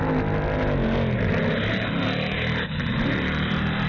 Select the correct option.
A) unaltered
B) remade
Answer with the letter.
A